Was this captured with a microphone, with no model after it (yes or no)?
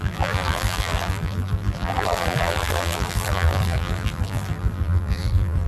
no